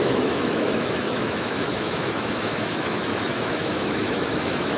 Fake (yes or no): yes